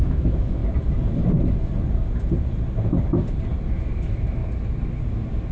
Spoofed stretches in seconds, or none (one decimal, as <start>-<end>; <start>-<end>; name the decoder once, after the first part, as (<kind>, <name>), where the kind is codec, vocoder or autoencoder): 0.0-0.6 (autoencoder, DAC-VAE); 3.7-4.4